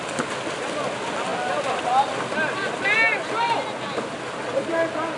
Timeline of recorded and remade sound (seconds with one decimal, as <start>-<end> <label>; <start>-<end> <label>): 0.0-5.2 recorded